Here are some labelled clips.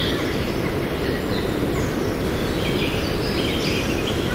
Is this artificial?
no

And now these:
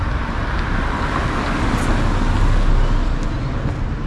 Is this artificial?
no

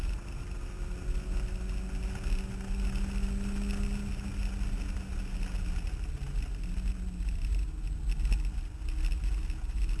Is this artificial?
no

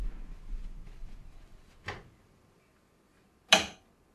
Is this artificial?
no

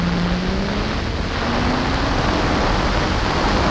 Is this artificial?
no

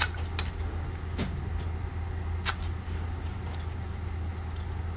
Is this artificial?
no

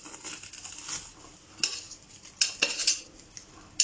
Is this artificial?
no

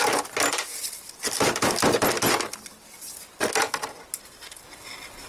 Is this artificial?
no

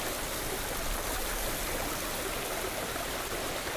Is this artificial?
no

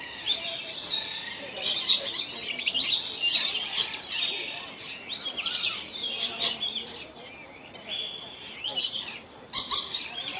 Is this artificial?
yes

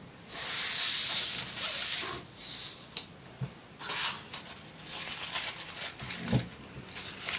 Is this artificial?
no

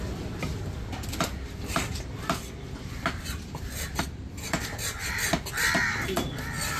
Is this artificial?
no